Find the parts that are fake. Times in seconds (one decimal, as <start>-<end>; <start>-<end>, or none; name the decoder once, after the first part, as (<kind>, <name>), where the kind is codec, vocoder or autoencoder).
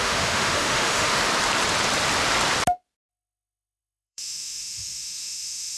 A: 0.0-1.2 (autoencoder, DAC-VAE); 3.1-5.8